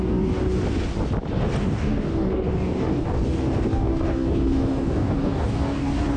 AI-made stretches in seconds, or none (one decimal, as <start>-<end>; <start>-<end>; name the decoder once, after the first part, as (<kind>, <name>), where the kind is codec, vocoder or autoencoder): 0.0-0.4 (codec, DAC); 1.6-6.2